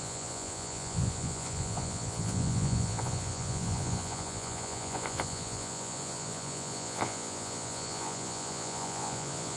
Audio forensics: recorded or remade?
remade